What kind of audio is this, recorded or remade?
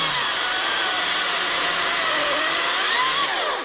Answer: remade